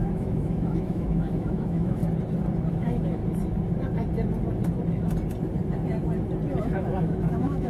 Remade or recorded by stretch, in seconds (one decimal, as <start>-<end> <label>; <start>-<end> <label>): 0.0-2.0 remade; 2.0-2.7 recorded; 2.7-3.2 remade; 3.2-6.6 recorded; 6.6-7.7 remade